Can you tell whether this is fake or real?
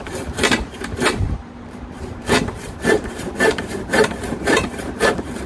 fake